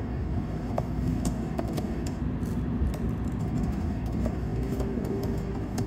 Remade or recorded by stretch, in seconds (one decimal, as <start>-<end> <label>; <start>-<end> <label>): 0.0-2.2 remade; 2.2-3.4 recorded; 3.4-5.9 remade